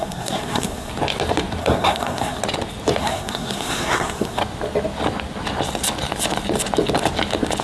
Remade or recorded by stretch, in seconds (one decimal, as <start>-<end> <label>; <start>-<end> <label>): 0.0-0.9 remade; 0.9-1.6 recorded; 1.6-2.4 remade; 2.4-3.0 recorded; 3.0-4.4 remade; 4.4-7.6 recorded